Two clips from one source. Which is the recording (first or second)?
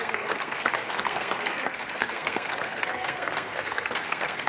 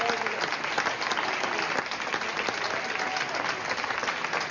second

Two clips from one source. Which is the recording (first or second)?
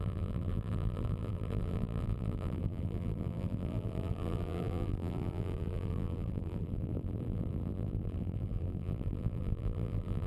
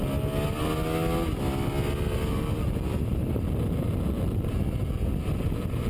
second